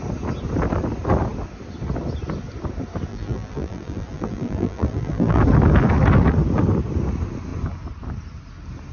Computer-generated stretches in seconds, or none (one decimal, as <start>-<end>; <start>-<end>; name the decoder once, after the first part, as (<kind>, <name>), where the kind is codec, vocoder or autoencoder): 3.1-5.4 (vocoder, BigVGAN v2)